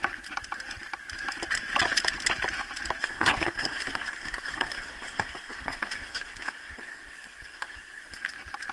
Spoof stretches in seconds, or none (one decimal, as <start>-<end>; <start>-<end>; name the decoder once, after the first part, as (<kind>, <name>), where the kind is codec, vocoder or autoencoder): 3.0-8.2 (codec, SNAC)